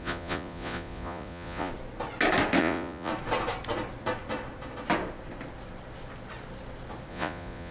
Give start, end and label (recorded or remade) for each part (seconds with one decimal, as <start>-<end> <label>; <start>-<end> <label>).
0.0-1.7 remade; 1.7-2.6 recorded; 2.6-3.1 remade; 3.1-7.1 recorded; 7.1-7.7 remade